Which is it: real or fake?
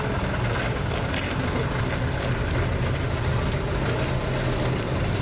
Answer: real